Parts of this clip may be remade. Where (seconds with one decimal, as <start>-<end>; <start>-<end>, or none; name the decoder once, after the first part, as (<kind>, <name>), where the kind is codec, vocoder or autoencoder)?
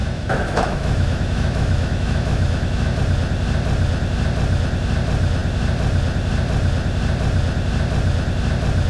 0.0-3.0 (autoencoder, DAC-VAE)